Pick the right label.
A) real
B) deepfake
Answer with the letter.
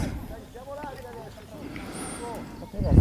A